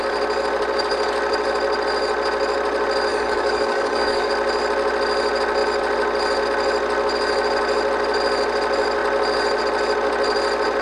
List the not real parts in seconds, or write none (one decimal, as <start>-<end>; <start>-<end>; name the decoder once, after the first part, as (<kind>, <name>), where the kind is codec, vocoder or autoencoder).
3.1-4.3 (codec, DAC)